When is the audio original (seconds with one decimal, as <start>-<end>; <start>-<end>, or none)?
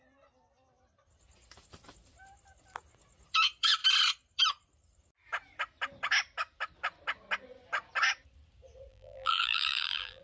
0.0-8.9